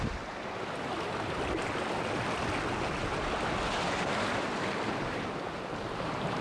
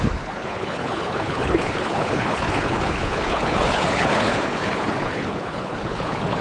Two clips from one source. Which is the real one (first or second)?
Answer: first